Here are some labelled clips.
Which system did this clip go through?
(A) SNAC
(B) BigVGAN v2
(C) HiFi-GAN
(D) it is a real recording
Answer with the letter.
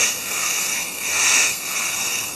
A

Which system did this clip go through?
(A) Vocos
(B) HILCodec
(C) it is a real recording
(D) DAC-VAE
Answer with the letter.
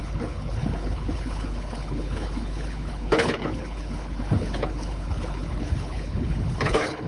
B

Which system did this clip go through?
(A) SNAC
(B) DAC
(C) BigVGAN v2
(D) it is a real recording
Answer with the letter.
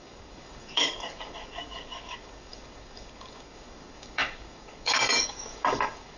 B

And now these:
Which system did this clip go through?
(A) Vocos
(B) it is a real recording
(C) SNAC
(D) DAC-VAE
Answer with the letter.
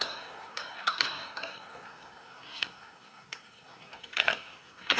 C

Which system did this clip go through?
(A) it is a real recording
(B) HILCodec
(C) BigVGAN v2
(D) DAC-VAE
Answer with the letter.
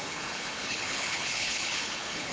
B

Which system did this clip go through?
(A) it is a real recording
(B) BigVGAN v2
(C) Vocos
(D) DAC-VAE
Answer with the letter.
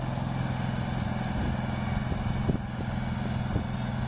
A